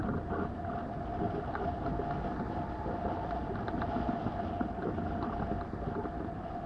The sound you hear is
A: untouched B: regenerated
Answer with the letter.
A